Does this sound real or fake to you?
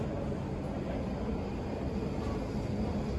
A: fake